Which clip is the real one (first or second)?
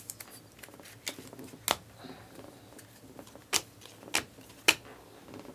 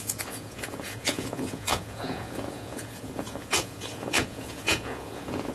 first